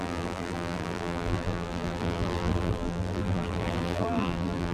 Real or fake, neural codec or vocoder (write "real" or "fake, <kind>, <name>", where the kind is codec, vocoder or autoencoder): fake, vocoder, BigVGAN v2